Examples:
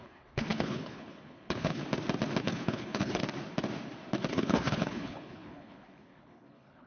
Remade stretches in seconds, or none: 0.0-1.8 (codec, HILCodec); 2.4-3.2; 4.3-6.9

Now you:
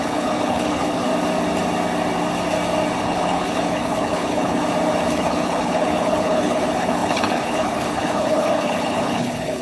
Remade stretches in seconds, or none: 0.0-1.1 (codec, HILCodec); 3.0-4.6; 5.1-9.6